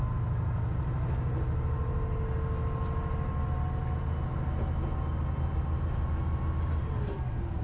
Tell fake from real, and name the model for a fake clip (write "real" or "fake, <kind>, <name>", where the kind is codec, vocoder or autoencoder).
real